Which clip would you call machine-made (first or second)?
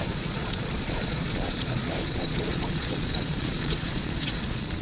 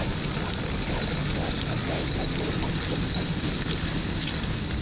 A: first